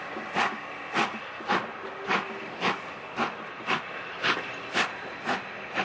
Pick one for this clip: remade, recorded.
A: recorded